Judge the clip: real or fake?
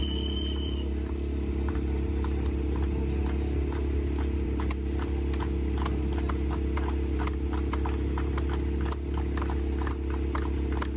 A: real